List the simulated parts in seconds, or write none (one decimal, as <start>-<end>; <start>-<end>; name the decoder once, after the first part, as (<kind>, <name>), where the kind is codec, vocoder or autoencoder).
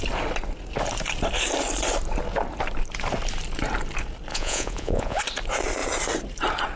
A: 4.3-5.2 (vocoder, Vocos)